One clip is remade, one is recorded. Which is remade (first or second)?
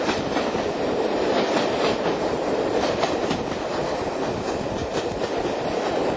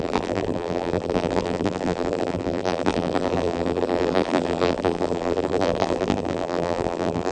second